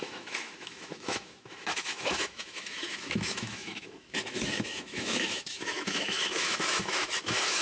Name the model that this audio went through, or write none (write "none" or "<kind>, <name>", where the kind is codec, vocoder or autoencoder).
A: autoencoder, DAC-VAE